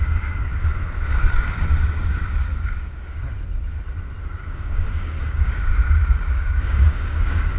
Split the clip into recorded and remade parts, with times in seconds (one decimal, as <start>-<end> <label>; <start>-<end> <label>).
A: 0.0-0.5 remade; 0.5-1.2 recorded; 1.2-3.2 remade; 3.2-4.3 recorded; 4.3-7.6 remade